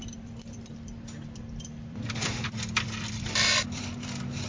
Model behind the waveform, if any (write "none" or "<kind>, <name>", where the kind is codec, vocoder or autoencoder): vocoder, BigVGAN v2